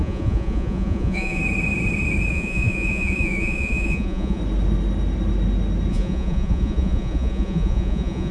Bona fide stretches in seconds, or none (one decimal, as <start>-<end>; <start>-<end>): 1.4-2.3; 4.4-5.9